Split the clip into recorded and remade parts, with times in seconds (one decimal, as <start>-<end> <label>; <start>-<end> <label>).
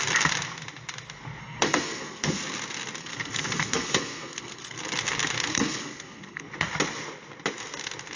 0.0-1.4 recorded; 1.4-2.4 remade; 2.4-3.0 recorded; 3.0-4.8 remade; 4.8-5.5 recorded; 5.5-6.4 remade; 6.4-8.2 recorded